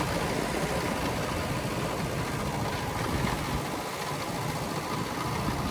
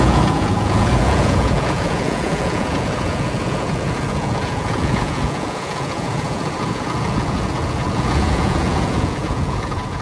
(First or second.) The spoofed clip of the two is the second